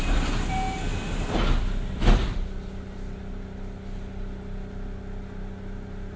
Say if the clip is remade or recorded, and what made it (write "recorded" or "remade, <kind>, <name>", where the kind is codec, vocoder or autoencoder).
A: recorded